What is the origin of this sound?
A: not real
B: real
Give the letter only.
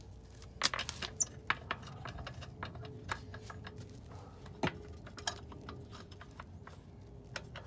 B